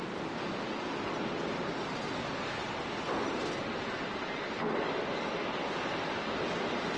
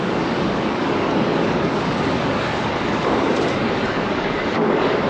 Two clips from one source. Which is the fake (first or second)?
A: second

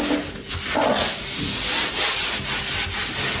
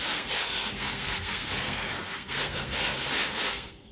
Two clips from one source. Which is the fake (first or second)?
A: second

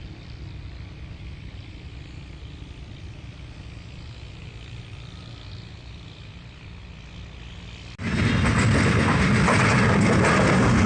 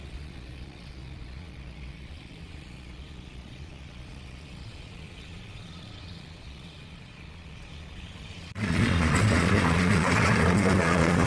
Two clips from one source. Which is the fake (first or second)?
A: second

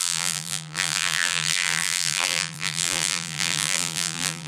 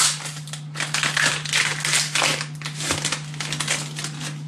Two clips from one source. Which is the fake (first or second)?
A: first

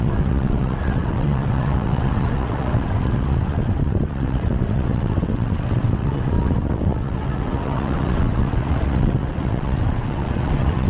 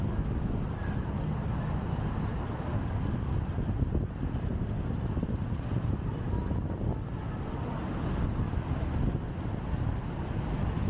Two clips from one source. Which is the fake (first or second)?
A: first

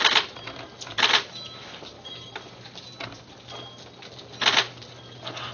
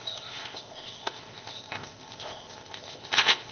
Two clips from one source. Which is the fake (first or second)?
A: second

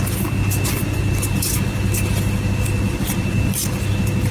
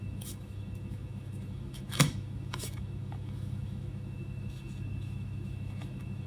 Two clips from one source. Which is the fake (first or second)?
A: second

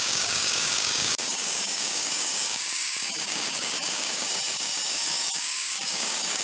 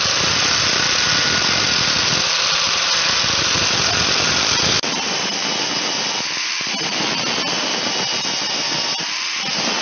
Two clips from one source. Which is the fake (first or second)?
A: first